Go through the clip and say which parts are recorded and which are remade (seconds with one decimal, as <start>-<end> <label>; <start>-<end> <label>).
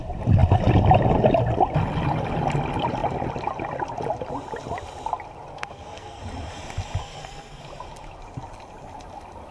0.0-5.5 recorded; 5.5-6.2 remade; 6.2-7.0 recorded; 7.0-7.6 remade; 7.6-9.5 recorded